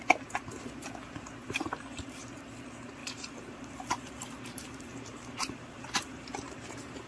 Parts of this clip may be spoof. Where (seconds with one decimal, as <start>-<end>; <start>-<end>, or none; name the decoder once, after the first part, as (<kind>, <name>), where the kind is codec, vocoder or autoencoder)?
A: 1.4-2.2 (vocoder, BigVGAN v2); 3.0-7.1